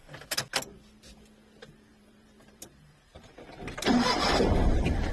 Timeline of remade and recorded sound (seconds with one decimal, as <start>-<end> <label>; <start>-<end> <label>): 0.0-1.9 recorded; 1.9-5.1 remade